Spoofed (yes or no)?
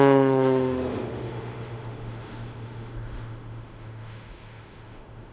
yes